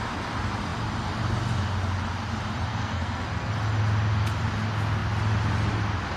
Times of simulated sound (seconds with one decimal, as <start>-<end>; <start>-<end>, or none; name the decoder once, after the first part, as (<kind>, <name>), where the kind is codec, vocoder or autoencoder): 2.7-3.5 (codec, SNAC)